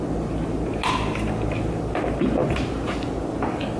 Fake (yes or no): no